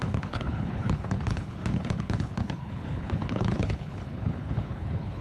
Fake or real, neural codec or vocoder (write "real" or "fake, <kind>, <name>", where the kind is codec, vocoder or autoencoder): fake, codec, HILCodec